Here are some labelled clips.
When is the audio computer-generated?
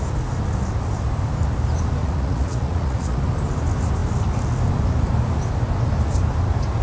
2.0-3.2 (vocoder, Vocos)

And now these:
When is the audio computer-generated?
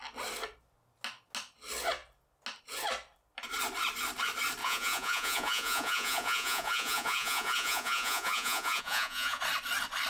4.6-9.4 (vocoder, Vocos)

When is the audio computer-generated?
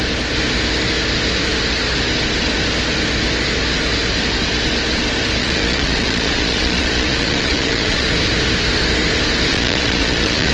5.4-8.1 (vocoder, Vocos); 9.5-10.5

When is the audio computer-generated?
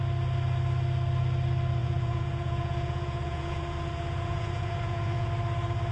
1.8-5.3 (vocoder, Vocos)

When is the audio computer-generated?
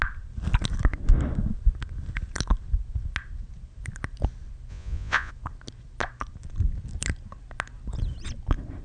4.7-5.3 (vocoder, Vocos)